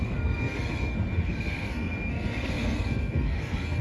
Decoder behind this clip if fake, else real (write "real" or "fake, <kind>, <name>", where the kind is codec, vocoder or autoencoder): fake, codec, SNAC